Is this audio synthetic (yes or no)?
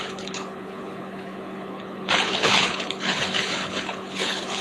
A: yes